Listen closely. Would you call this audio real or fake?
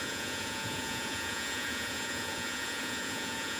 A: fake